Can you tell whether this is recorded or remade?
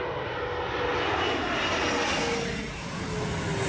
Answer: recorded